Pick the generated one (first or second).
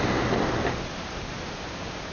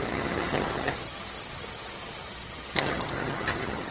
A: second